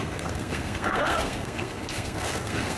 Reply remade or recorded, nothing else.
remade